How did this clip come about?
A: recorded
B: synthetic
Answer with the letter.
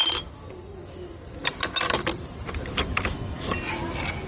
A